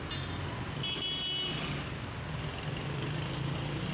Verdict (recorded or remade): recorded